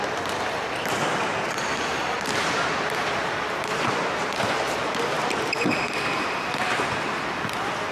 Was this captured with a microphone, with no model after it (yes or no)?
yes